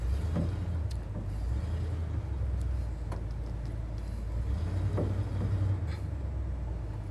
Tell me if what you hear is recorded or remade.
recorded